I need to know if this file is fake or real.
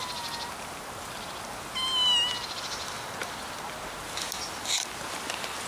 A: real